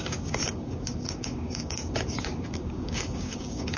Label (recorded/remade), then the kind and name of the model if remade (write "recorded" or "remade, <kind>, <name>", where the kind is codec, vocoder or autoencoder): remade, codec, DAC